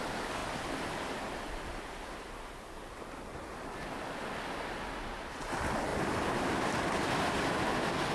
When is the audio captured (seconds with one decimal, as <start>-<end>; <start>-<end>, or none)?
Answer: 0.0-0.4; 2.3-5.9; 7.1-8.1